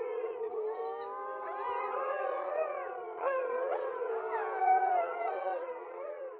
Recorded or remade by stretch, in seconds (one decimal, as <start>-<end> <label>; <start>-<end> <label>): 0.0-0.8 remade; 0.8-1.8 recorded; 1.8-4.1 remade; 4.1-4.6 recorded; 4.6-6.4 remade